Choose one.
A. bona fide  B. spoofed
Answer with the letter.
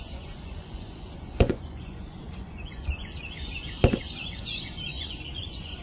B